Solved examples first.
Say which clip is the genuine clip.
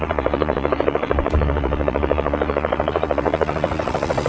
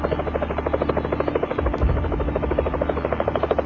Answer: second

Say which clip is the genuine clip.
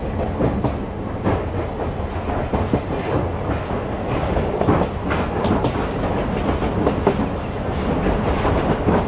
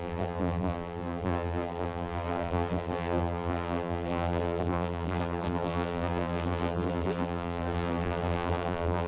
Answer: first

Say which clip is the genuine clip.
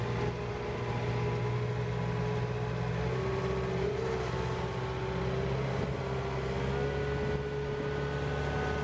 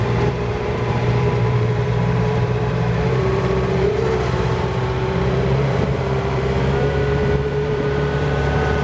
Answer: first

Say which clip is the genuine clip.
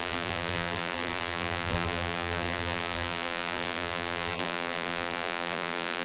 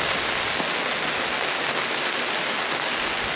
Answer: second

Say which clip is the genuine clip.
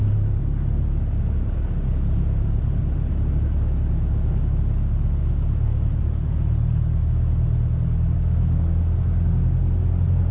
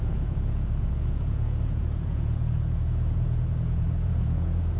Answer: first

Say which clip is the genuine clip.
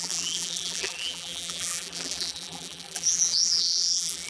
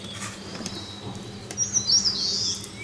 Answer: second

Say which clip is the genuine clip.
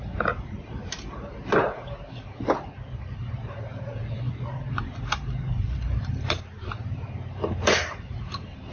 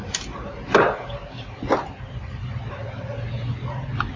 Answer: second